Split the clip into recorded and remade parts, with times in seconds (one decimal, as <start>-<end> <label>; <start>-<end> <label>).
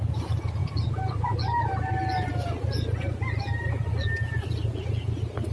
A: 0.0-5.5 recorded